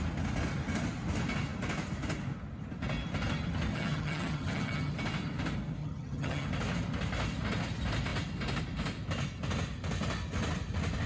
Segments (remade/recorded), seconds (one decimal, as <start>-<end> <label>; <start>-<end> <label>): 0.0-3.7 recorded; 3.7-4.9 remade; 4.9-5.8 recorded; 5.8-6.5 remade; 6.5-11.1 recorded